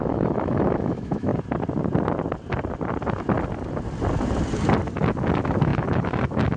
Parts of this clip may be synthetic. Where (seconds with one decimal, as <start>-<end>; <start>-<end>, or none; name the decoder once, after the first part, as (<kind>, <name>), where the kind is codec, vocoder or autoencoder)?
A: 0.0-1.3 (autoencoder, DAC-VAE); 5.3-6.6